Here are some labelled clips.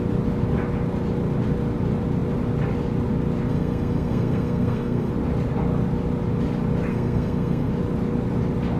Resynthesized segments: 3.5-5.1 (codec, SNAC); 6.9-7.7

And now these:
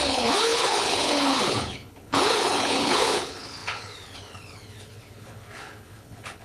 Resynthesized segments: 0.0-6.4 (codec, HILCodec)